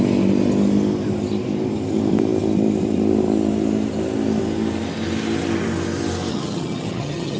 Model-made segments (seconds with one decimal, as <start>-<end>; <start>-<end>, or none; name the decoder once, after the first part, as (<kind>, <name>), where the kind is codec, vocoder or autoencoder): 6.3-7.4 (vocoder, HiFi-GAN)